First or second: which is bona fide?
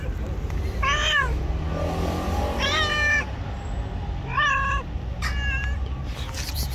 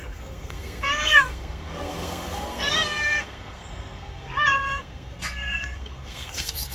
first